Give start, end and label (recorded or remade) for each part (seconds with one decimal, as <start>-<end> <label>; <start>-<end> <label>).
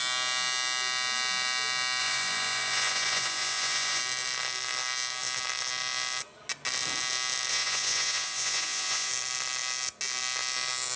0.0-2.0 recorded; 2.0-4.0 remade; 4.0-7.5 recorded; 7.5-9.1 remade; 9.1-11.0 recorded